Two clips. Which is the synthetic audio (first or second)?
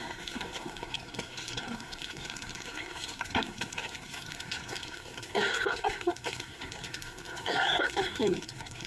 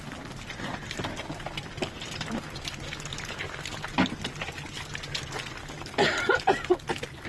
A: first